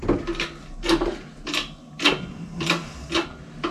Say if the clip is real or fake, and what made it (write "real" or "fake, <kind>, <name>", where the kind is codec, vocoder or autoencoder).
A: real